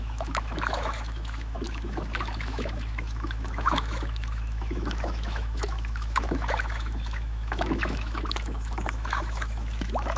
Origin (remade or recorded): remade